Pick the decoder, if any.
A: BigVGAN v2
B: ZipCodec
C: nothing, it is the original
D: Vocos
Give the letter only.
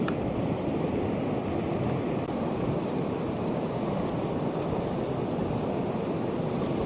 C